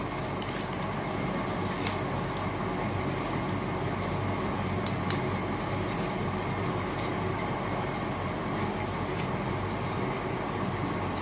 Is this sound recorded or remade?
recorded